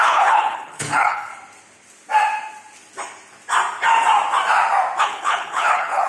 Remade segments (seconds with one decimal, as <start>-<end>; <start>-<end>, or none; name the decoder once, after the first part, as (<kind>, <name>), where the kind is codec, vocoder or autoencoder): 0.0-1.3 (codec, HILCodec); 5.0-6.1